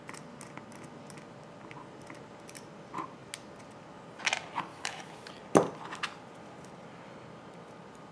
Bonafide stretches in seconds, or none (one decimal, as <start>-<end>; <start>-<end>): 0.0-4.7; 5.3-8.1